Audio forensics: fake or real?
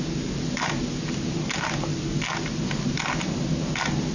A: real